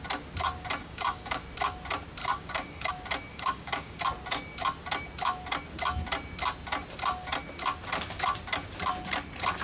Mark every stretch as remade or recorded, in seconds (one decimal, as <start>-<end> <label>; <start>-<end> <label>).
0.0-0.8 recorded; 0.8-1.4 remade; 1.4-2.2 recorded; 2.2-2.9 remade; 2.9-3.3 recorded; 3.3-4.0 remade; 4.0-9.6 recorded

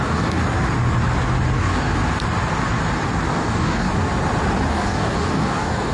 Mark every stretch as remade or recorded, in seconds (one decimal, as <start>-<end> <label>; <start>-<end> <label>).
0.0-0.4 remade; 0.4-1.6 recorded; 1.6-2.0 remade; 2.0-3.3 recorded; 3.3-3.9 remade; 3.9-4.7 recorded; 4.7-5.9 remade

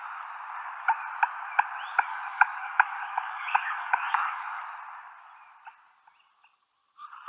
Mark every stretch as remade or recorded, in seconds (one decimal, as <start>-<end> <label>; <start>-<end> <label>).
0.0-2.1 recorded; 2.1-4.6 remade; 4.6-7.3 recorded

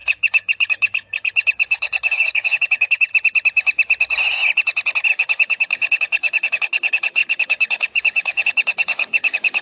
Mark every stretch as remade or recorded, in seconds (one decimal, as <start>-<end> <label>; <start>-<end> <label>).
0.0-3.1 remade; 3.1-5.1 recorded; 5.1-9.6 remade

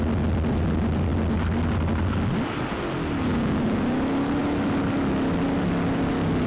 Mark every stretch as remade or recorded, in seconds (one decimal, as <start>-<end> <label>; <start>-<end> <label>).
0.0-3.3 recorded; 3.3-3.8 remade; 3.8-6.5 recorded